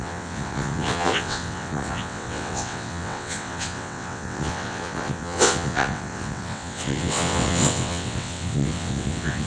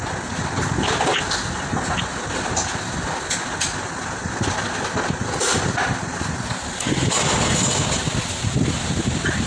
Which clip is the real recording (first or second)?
second